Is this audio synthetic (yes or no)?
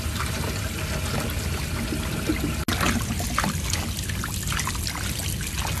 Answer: no